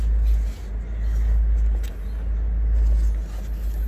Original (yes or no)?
yes